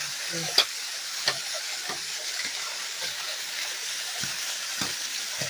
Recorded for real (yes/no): no